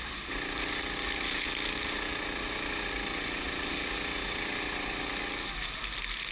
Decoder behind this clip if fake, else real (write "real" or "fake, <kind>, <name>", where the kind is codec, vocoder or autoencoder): real